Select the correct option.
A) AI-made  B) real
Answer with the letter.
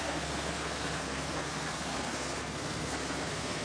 A